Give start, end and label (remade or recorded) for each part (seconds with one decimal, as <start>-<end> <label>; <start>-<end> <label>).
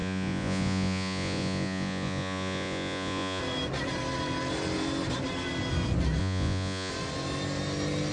0.0-3.4 remade; 3.4-6.2 recorded; 6.2-6.9 remade; 6.9-8.1 recorded